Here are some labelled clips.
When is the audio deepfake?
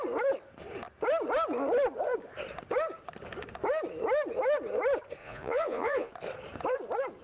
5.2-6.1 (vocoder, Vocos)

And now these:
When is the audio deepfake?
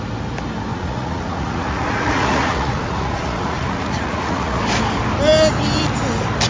0.7-4.6 (vocoder, Vocos)